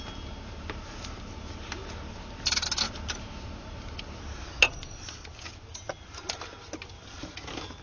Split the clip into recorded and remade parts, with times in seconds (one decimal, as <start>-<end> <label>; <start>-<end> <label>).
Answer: 0.0-7.8 recorded